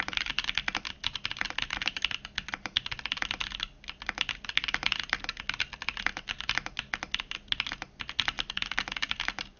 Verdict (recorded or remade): recorded